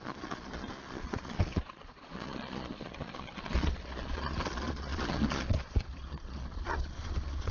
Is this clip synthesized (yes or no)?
yes